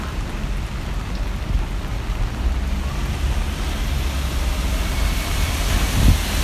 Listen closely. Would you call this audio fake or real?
real